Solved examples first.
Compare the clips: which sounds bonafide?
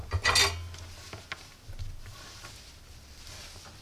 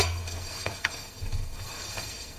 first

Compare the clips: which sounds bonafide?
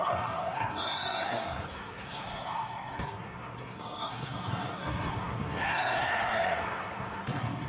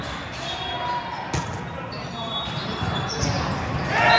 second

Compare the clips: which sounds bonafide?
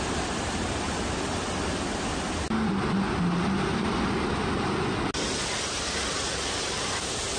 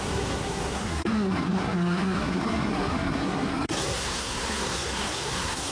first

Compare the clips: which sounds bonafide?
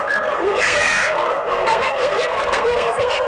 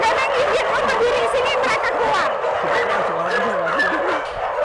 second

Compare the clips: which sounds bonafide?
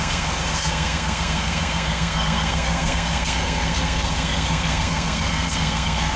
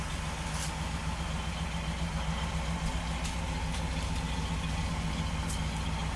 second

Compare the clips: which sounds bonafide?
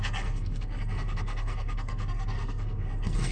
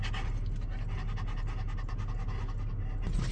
second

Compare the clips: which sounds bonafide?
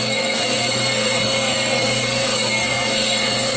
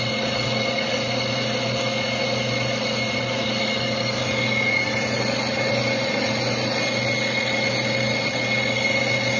second